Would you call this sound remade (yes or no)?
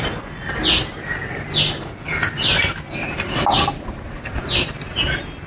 no